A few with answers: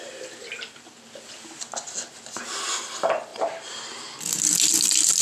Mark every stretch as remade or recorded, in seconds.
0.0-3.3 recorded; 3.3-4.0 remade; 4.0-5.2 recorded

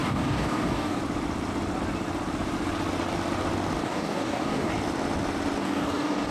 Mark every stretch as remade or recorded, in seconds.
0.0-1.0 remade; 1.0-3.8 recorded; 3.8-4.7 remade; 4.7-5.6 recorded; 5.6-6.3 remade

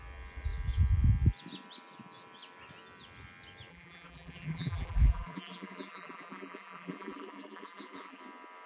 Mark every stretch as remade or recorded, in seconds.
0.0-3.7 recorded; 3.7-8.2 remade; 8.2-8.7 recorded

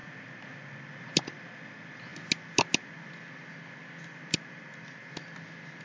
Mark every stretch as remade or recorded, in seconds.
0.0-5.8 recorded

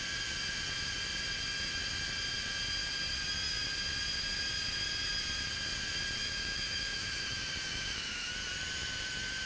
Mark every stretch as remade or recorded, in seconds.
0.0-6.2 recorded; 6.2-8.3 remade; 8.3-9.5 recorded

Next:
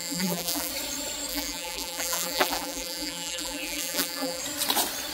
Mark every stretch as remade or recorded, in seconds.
0.0-0.7 remade; 0.7-1.3 recorded; 1.3-4.4 remade; 4.4-5.1 recorded

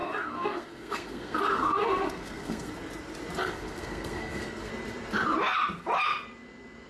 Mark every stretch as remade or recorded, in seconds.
0.0-2.7 remade; 2.7-3.4 recorded; 3.4-4.7 remade; 4.7-6.9 recorded